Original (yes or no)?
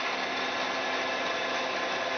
yes